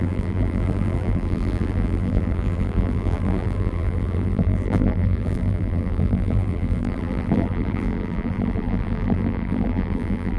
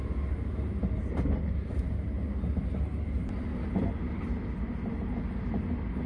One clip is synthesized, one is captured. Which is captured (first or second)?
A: second